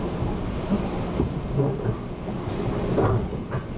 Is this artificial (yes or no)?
no